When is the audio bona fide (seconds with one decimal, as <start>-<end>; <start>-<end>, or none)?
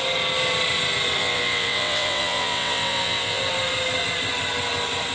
0.0-1.2; 3.4-5.1